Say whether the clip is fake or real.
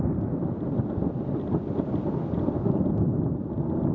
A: real